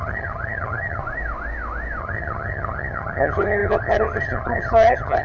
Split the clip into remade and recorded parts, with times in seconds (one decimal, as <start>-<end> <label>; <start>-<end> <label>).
0.0-1.0 remade; 1.0-2.0 recorded; 2.0-5.2 remade